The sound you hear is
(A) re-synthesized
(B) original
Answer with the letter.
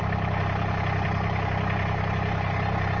B